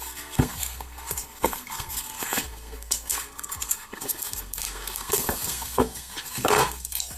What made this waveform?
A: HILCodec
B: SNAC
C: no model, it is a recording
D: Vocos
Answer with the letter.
B